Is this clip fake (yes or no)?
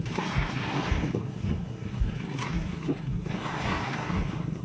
yes